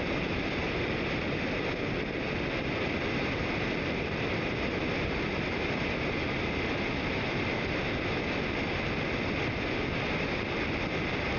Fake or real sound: real